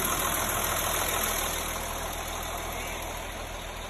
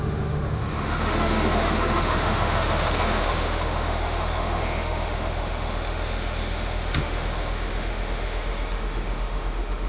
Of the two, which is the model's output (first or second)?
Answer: second